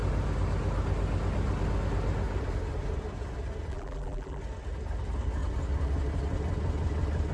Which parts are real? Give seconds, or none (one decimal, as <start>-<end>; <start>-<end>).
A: 0.0-3.7; 4.4-7.3